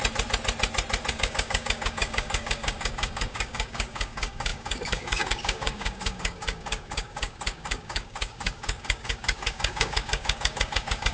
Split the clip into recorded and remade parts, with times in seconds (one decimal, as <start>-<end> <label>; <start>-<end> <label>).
0.0-1.1 recorded; 1.1-11.1 remade

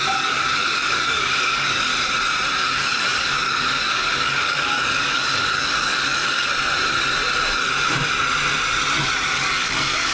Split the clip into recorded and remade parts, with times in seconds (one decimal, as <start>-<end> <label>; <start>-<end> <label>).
0.0-1.9 remade; 1.9-2.6 recorded; 2.6-6.5 remade; 6.5-9.3 recorded; 9.3-10.1 remade